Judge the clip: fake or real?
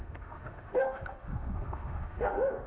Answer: fake